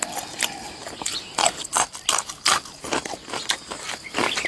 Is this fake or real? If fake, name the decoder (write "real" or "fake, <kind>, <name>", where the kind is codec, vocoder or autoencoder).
real